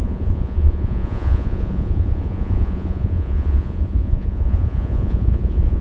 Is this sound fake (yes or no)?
yes